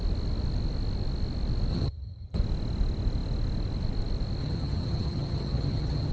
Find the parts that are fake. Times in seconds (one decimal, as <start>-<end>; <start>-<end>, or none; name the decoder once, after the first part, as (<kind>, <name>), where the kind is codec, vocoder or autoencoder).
1.7-2.4 (vocoder, HiFi-GAN); 4.4-6.1